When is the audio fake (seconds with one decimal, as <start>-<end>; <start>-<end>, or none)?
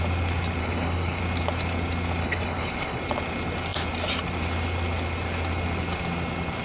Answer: 0.6-1.2; 2.2-3.0